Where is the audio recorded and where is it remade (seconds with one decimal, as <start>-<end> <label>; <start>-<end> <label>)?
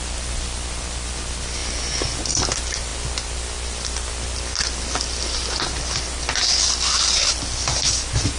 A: 0.0-8.4 recorded